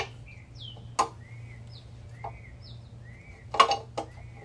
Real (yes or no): yes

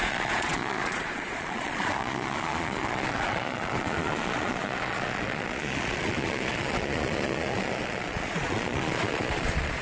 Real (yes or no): no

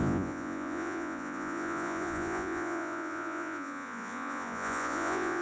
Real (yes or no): no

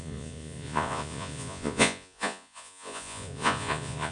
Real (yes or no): no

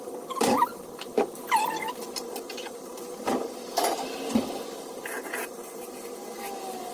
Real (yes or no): yes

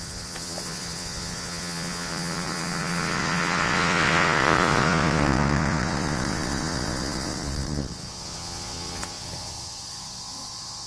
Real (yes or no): no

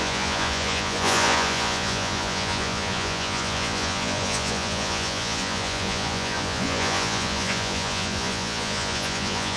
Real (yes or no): no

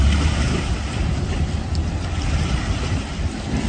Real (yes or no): yes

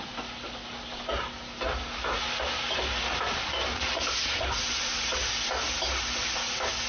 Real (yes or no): yes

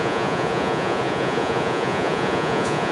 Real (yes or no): no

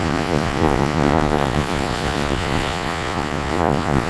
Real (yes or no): no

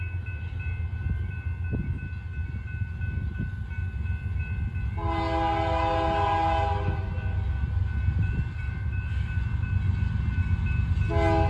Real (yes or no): yes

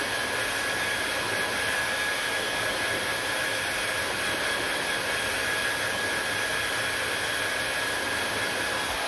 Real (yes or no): yes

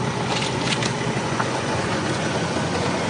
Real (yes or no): no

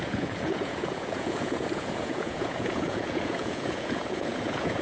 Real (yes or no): no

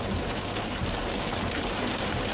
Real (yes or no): yes